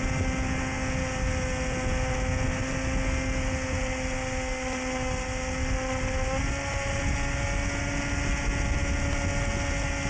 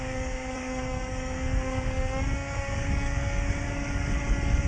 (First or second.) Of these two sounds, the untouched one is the first